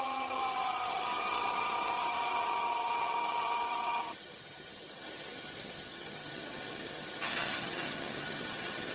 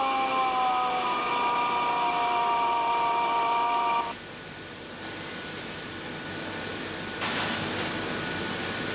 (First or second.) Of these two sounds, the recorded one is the second